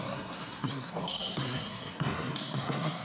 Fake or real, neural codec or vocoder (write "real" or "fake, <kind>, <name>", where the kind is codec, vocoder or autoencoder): fake, codec, SNAC